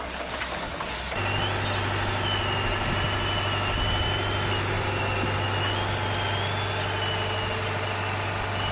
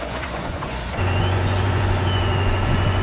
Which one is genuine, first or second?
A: first